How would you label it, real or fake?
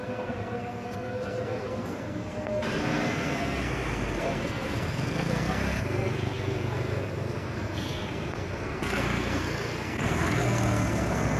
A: fake